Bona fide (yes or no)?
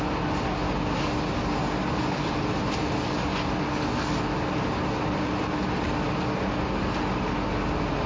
yes